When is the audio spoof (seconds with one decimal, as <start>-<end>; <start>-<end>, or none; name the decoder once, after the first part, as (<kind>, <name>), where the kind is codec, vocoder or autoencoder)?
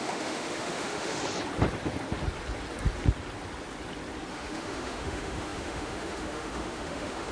0.0-1.2 (autoencoder, DAC-VAE); 4.3-7.3